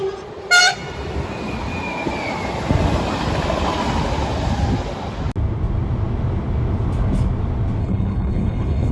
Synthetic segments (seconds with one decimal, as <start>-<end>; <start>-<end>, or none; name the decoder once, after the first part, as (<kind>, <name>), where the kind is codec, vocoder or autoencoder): 7.8-8.9 (codec, HILCodec)